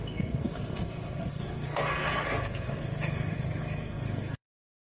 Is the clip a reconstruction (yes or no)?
yes